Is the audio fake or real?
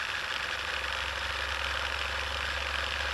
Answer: fake